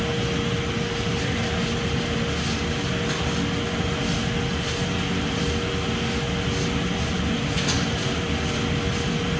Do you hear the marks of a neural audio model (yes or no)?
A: no